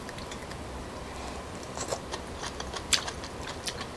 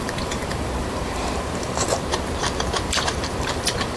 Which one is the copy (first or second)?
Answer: second